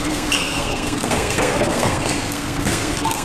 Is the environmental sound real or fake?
fake